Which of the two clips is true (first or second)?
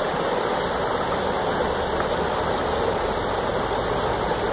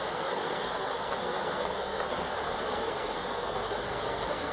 first